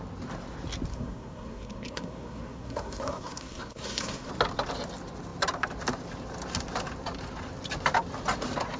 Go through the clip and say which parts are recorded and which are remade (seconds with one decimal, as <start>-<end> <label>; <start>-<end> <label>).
0.0-0.9 recorded; 0.9-4.3 remade; 4.3-8.8 recorded